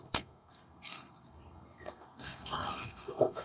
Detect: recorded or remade remade